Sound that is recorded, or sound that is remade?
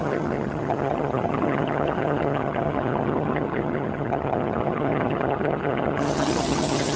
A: remade